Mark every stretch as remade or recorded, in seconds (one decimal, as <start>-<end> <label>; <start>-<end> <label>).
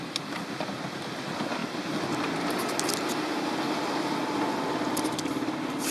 0.0-5.9 recorded